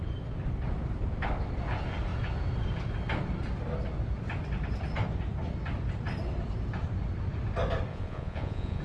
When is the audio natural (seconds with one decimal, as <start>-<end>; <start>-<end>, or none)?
0.0-7.9